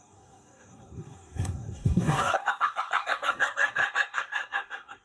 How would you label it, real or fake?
fake